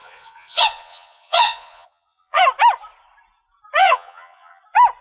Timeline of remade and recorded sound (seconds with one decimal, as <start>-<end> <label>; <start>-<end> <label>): 0.0-2.4 remade; 2.4-3.8 recorded; 3.8-4.6 remade; 4.6-5.0 recorded